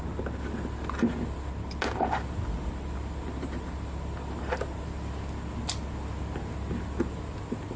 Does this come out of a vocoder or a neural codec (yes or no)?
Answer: no